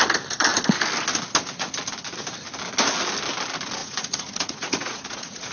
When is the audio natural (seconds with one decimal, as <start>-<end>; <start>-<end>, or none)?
0.0-3.8